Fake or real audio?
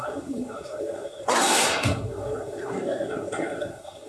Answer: fake